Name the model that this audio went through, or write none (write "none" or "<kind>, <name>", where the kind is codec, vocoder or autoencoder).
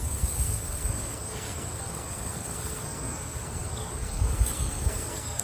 codec, SNAC